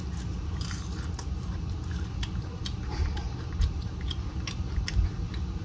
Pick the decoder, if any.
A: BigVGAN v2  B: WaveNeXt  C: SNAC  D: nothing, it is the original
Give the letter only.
A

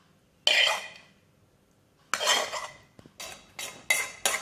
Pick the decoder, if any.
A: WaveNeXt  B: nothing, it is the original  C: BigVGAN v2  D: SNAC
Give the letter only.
B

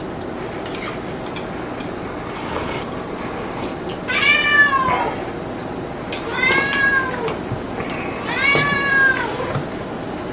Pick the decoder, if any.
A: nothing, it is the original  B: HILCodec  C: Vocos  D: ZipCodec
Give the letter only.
A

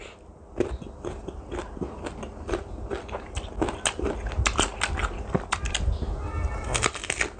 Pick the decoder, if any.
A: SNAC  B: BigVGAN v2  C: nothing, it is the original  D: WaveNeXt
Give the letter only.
C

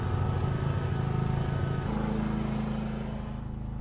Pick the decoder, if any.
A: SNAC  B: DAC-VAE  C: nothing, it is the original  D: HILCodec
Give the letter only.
C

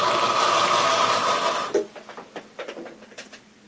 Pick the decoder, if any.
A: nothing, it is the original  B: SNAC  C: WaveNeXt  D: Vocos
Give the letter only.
A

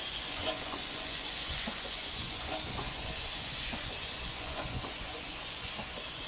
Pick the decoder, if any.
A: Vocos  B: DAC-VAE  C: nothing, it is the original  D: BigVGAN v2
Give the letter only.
A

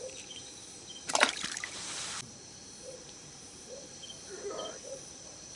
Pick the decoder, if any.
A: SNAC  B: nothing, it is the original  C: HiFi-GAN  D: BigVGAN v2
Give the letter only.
D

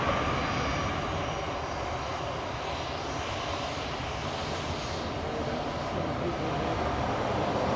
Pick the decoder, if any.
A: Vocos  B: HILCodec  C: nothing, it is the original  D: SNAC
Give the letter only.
C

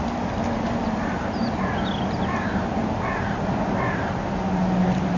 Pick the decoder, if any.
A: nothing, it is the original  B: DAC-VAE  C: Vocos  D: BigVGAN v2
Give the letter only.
A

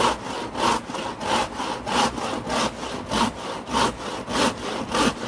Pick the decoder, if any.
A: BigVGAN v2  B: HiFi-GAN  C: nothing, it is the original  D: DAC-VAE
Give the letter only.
C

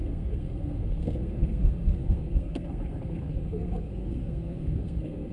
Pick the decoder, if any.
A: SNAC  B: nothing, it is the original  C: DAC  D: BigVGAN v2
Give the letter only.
A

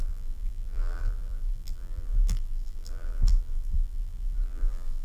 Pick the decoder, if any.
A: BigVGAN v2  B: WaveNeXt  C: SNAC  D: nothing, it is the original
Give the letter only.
A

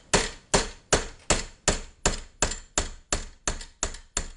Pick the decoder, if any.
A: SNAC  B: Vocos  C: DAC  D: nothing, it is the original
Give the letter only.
D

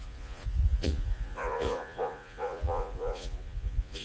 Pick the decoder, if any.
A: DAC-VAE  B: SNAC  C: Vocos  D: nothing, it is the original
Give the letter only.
C